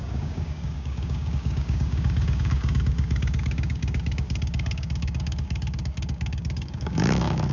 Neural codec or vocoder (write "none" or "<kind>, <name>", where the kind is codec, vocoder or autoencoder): codec, DAC